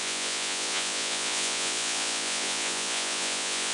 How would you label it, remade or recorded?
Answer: remade